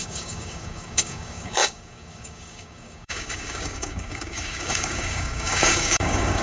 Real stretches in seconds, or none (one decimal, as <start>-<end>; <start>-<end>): none